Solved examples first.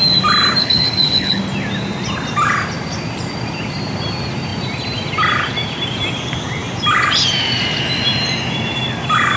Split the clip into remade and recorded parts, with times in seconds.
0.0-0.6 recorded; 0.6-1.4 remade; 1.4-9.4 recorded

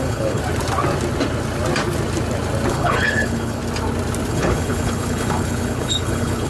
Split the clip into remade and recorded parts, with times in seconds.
0.0-0.4 remade; 0.4-2.7 recorded; 2.7-3.6 remade; 3.6-4.3 recorded; 4.3-6.5 remade

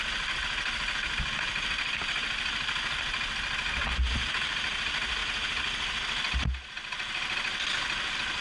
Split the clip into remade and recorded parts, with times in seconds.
0.0-8.4 recorded

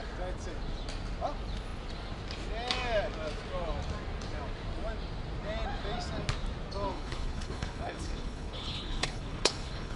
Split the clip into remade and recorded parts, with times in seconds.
0.0-6.9 recorded; 6.9-10.0 remade

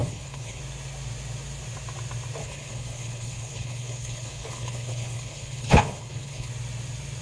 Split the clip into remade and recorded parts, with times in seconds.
0.0-0.6 remade; 0.6-2.4 recorded; 2.4-6.5 remade; 6.5-7.2 recorded